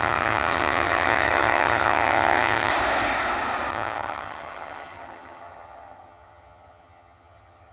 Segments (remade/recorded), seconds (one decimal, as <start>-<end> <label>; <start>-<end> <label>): 0.0-2.7 remade; 2.7-3.7 recorded; 3.7-7.7 remade